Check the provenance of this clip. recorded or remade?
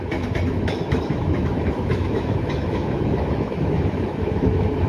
remade